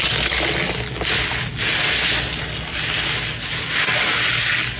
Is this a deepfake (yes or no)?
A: no